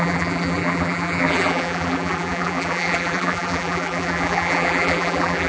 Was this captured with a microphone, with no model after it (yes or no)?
no